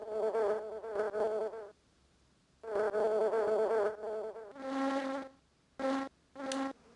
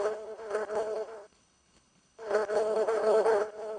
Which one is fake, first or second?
second